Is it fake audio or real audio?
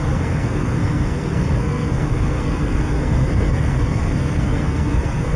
fake